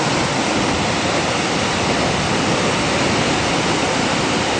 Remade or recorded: recorded